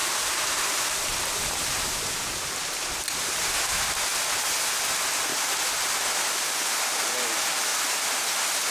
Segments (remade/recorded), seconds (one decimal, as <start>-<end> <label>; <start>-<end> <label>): 0.0-8.7 recorded